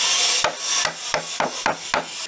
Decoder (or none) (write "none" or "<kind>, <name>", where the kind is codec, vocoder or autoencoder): none